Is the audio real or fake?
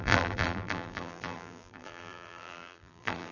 fake